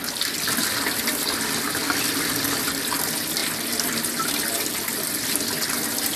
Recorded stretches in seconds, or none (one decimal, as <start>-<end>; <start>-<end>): 0.0-6.2